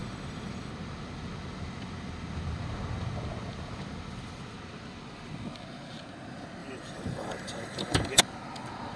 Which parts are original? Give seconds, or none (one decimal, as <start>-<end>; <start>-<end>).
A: 0.7-6.6; 8.2-9.0